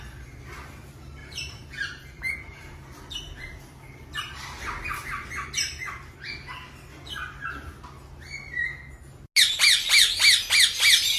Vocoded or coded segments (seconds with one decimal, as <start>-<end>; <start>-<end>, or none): 1.2-3.8